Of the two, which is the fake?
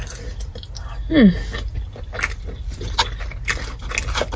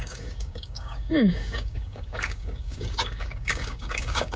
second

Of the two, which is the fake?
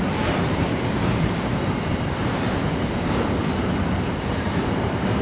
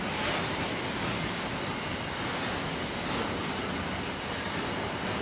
first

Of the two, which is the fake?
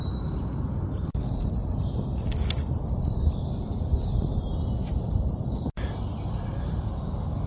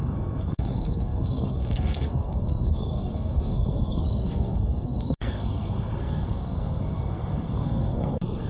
second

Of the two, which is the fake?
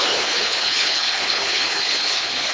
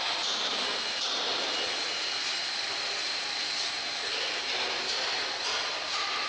first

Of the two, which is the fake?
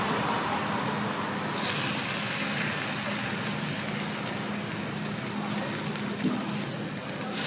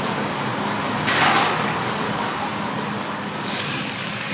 second